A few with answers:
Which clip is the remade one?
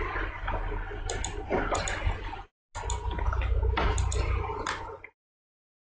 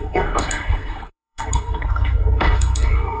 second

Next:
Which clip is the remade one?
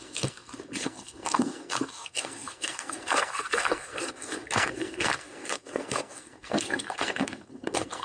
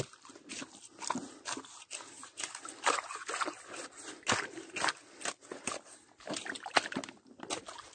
first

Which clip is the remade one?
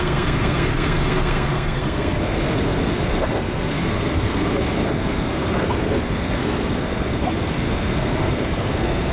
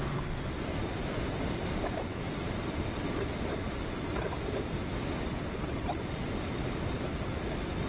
first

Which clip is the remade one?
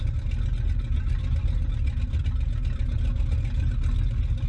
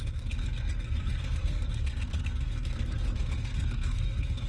second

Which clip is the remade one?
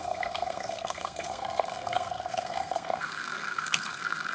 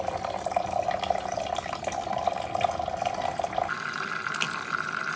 first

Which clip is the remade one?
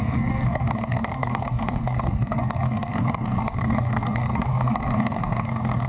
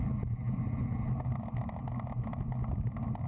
first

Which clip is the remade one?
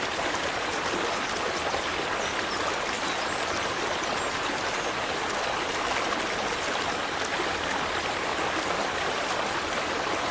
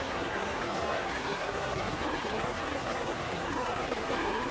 second